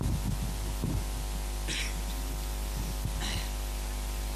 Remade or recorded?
recorded